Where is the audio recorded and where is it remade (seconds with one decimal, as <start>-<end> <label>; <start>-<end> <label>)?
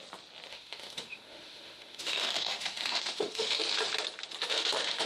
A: 0.0-0.5 recorded; 0.5-3.6 remade; 3.6-4.4 recorded; 4.4-5.1 remade